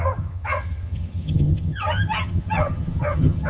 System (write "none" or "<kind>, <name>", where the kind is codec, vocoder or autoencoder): vocoder, HiFi-GAN